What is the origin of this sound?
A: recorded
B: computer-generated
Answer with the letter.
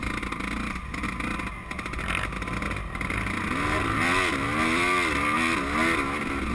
A